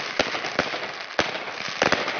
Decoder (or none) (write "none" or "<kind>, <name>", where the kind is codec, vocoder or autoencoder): none